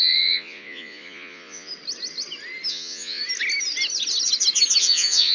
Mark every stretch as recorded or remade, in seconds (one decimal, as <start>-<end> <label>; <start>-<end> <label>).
0.0-1.7 remade; 1.7-2.7 recorded; 2.7-3.2 remade; 3.2-4.8 recorded; 4.8-5.3 remade